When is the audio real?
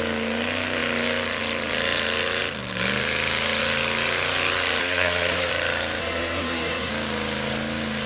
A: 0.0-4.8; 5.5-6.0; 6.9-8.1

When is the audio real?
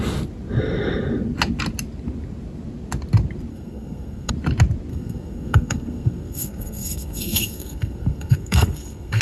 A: 0.0-3.5; 4.3-4.9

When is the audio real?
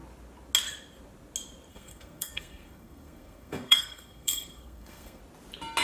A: 0.0-1.7; 5.2-5.8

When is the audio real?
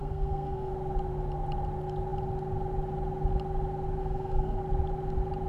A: 0.7-4.0; 4.6-5.5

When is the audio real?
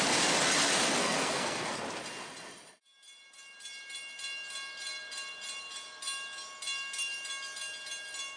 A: 0.0-1.0; 1.7-8.4